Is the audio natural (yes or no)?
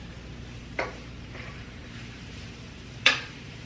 no